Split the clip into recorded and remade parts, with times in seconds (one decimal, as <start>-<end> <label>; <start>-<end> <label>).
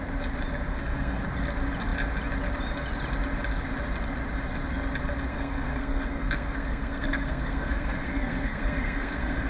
0.0-0.7 recorded; 0.7-1.2 remade; 1.2-5.3 recorded; 5.3-9.5 remade